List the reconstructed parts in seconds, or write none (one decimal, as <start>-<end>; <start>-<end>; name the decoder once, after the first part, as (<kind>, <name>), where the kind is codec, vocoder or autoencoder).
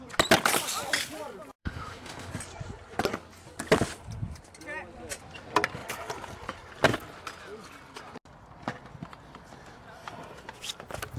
1.6-2.3 (autoencoder, DAC-VAE)